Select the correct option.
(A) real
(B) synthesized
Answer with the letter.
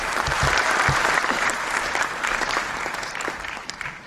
B